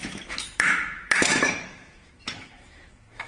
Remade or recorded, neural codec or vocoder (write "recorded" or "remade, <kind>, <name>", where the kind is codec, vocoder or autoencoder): remade, autoencoder, DAC-VAE